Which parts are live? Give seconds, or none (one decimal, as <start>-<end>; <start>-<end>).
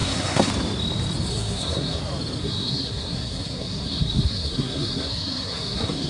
0.5-1.3; 2.0-2.4